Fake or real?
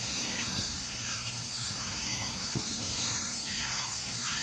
fake